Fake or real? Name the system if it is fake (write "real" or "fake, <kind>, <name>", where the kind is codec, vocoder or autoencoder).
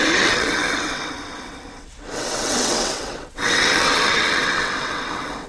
fake, vocoder, WaveNeXt